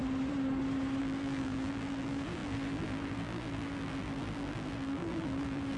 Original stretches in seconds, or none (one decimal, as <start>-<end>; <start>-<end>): 0.0-1.0